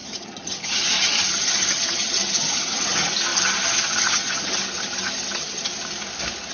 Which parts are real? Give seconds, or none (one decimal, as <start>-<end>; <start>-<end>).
5.7-6.5